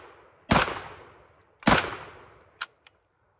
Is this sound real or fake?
real